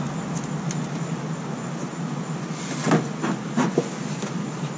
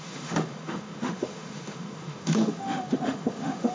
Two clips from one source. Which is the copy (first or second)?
second